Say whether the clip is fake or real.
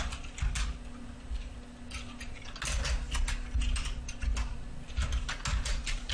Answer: real